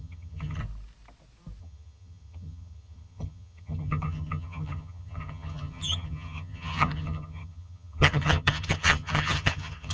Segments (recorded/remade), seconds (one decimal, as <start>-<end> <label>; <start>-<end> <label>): 0.0-0.6 remade; 0.6-1.6 recorded; 1.6-9.9 remade